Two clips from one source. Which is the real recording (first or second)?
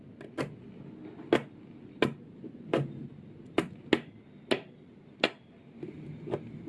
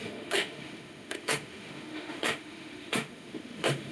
first